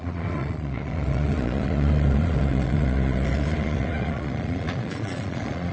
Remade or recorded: remade